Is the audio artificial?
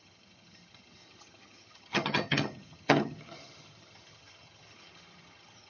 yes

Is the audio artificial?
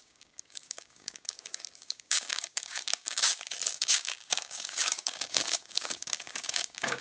yes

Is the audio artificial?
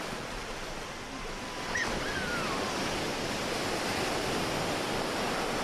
no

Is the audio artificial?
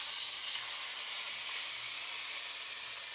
no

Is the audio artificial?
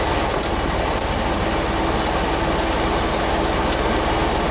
no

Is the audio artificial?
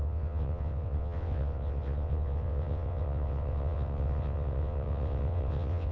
yes